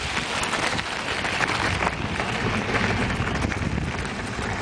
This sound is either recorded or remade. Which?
recorded